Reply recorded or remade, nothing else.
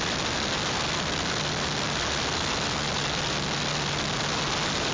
recorded